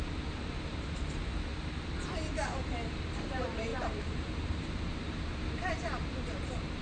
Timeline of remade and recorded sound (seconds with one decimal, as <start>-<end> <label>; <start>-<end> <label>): 0.0-1.5 remade; 1.5-2.9 recorded; 2.9-6.8 remade